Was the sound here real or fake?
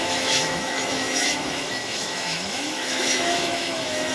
fake